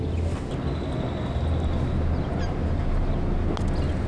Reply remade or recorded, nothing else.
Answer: recorded